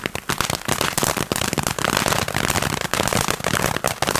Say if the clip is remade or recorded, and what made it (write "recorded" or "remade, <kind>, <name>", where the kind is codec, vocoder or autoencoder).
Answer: recorded